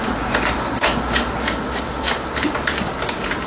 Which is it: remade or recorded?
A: recorded